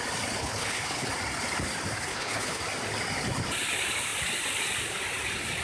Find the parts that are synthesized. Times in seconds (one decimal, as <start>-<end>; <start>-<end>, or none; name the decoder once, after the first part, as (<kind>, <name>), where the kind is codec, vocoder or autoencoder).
0.4-1.1 (codec, HILCodec); 2.1-2.6